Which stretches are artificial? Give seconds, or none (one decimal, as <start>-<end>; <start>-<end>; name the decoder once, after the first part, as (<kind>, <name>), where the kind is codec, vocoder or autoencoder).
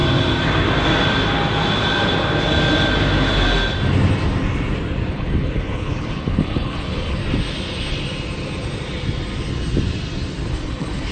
5.1-7.2 (codec, HILCodec); 10.5-11.1